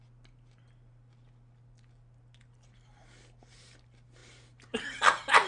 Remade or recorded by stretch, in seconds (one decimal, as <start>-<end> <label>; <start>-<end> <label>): 0.0-5.5 recorded